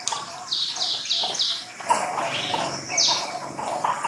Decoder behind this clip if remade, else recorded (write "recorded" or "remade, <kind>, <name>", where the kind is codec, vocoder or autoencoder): recorded